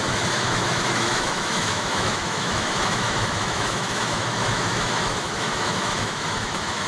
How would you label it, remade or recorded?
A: remade